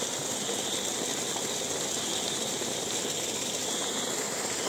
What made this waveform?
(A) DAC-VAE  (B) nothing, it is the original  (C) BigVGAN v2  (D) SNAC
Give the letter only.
B